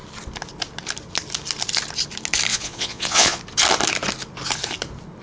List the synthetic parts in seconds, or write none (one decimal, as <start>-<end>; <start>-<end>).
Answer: 2.5-3.4